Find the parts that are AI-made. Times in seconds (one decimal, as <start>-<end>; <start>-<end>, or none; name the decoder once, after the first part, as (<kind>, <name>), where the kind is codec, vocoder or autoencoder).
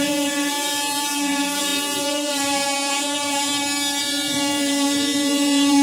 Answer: 0.0-3.5 (vocoder, Vocos); 4.0-5.8